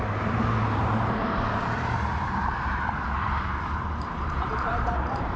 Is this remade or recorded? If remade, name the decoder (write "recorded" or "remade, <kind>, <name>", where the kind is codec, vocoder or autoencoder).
remade, vocoder, BigVGAN v2